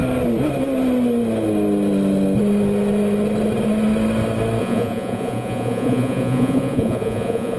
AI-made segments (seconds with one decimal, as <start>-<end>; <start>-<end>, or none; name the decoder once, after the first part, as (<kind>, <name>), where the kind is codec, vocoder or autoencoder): 4.6-7.6 (vocoder, Vocos)